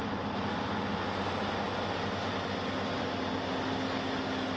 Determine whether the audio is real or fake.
real